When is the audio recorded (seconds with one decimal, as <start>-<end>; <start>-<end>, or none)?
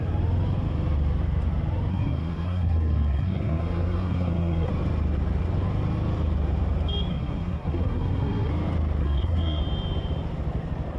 0.0-1.9; 4.7-7.1; 8.5-9.0; 9.6-11.0